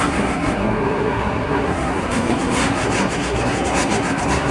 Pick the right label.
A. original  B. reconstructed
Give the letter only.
B